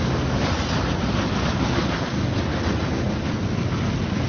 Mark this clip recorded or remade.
recorded